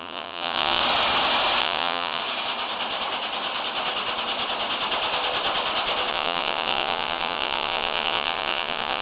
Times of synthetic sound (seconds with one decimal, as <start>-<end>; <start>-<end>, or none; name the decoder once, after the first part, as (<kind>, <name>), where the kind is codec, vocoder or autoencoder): 0.0-0.8 (vocoder, WaveNeXt); 1.6-2.2; 6.1-9.0